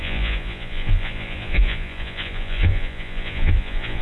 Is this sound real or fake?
fake